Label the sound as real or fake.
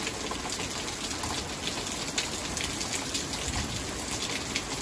real